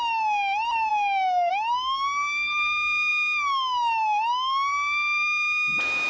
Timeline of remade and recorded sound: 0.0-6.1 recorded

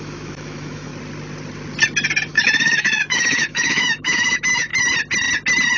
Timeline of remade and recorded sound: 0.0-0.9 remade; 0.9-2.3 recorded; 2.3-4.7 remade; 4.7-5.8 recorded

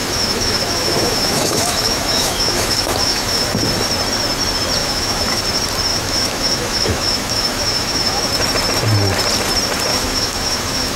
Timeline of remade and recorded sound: 0.0-3.5 remade; 3.5-4.8 recorded; 4.8-5.4 remade; 5.4-5.9 recorded; 5.9-8.3 remade; 8.3-9.9 recorded; 9.9-11.0 remade